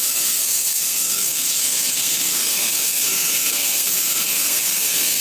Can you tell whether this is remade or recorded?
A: remade